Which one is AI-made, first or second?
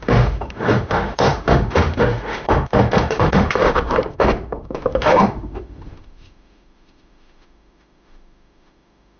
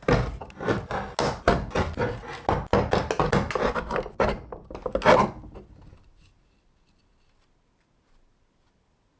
first